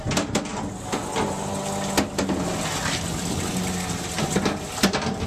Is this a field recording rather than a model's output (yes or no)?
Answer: yes